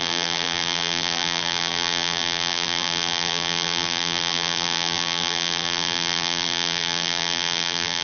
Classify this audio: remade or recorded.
remade